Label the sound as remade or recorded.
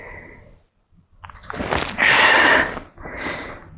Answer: recorded